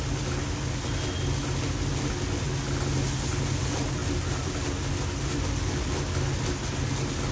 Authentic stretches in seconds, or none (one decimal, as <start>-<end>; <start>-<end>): 0.0-7.3